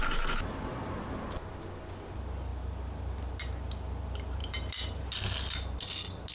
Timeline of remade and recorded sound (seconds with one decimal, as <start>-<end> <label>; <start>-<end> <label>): 0.0-4.4 recorded; 4.4-5.0 remade; 5.0-6.3 recorded